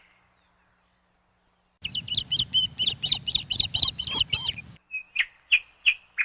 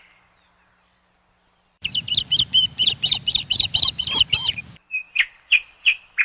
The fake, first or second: second